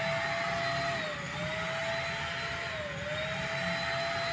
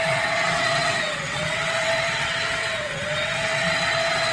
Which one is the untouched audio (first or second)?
first